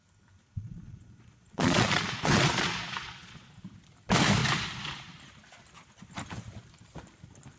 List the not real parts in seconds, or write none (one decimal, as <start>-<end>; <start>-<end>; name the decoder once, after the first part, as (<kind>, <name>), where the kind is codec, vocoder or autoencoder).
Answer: 0.4-3.5 (vocoder, Vocos)